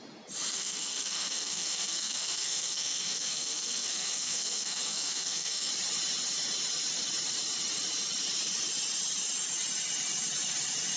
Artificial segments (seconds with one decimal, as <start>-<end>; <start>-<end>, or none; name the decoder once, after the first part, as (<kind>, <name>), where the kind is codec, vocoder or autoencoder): 0.5-5.7 (codec, SNAC)